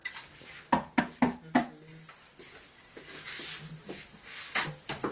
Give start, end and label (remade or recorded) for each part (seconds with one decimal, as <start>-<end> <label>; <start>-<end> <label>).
0.0-5.1 recorded